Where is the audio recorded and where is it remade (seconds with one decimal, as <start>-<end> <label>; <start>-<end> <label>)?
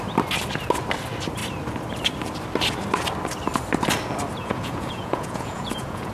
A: 0.0-4.4 recorded; 4.4-6.1 remade